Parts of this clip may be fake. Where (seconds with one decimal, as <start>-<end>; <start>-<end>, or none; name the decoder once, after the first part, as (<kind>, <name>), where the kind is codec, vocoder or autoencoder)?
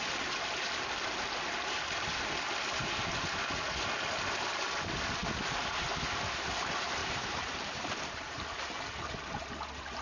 7.0-8.8 (vocoder, BigVGAN v2)